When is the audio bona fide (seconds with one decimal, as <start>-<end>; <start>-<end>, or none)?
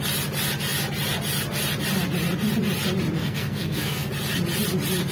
0.0-3.2; 4.1-5.1